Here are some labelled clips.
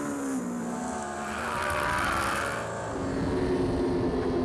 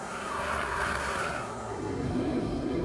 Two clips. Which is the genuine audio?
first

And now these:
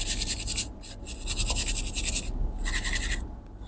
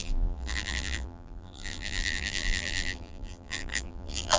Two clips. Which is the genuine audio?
first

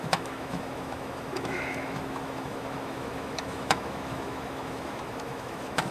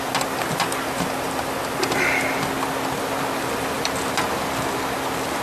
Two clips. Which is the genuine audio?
second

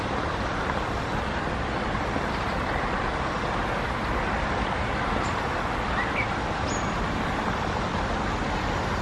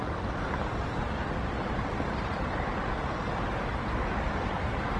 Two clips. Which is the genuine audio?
first